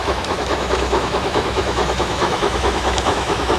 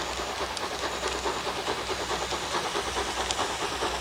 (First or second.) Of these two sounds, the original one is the second